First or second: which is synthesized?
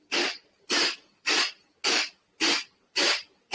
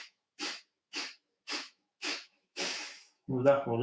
second